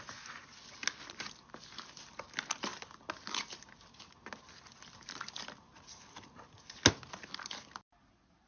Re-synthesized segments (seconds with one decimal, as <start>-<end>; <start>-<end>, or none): none